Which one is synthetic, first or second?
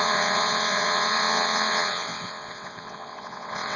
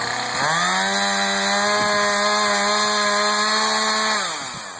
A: first